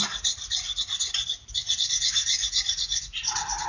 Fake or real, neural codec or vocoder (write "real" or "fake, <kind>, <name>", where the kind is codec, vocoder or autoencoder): real